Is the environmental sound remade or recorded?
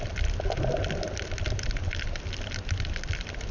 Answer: remade